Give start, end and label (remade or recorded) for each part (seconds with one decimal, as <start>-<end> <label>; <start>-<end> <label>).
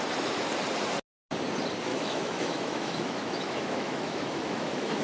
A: 0.0-1.9 recorded; 1.9-5.0 remade